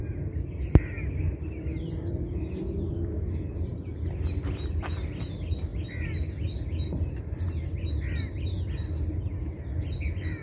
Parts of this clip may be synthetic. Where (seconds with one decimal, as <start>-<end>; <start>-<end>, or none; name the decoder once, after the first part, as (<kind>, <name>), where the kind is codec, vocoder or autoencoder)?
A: none